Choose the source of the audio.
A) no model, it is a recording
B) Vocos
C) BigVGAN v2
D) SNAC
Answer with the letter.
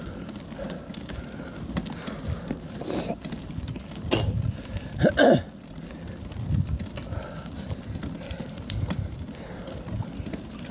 A